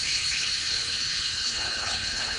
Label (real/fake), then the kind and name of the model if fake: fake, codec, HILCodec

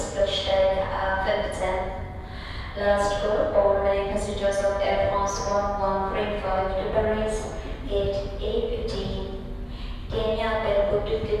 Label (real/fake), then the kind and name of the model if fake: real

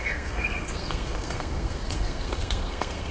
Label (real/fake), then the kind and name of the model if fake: fake, codec, SNAC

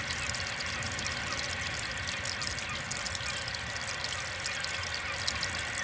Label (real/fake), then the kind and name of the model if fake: real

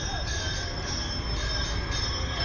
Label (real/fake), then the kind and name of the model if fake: real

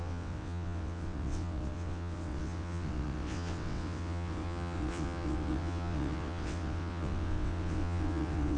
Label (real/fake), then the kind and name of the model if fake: fake, vocoder, WaveNeXt